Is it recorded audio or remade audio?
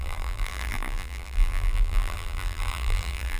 remade